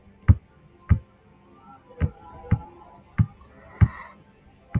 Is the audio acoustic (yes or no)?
yes